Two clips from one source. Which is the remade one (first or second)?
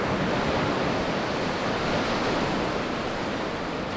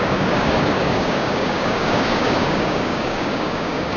second